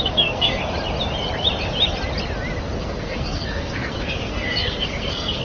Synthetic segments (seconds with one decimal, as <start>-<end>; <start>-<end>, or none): 0.0-0.6; 2.8-5.4